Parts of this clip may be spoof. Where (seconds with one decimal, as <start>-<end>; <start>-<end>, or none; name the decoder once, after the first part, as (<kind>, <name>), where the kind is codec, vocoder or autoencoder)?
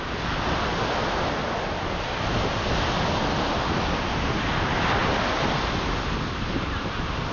none